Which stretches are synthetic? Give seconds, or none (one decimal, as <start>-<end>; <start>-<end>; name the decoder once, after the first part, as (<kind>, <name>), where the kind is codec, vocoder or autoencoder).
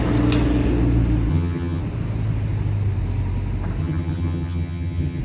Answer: 1.3-1.8 (vocoder, HiFi-GAN); 3.8-5.2